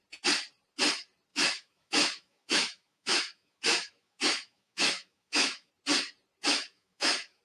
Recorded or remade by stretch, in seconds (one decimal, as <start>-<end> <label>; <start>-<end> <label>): 0.0-1.3 recorded; 1.3-5.7 remade; 5.7-6.5 recorded; 6.5-7.4 remade